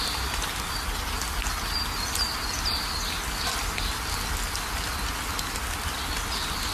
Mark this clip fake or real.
real